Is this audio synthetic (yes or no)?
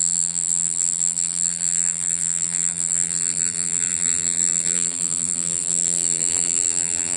yes